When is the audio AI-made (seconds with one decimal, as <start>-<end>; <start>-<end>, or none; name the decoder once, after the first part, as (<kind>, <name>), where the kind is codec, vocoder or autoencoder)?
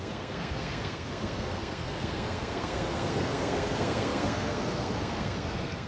0.0-5.9 (codec, SNAC)